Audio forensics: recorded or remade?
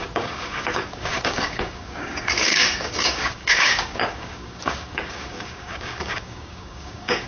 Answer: remade